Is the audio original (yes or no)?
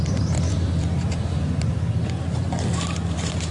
no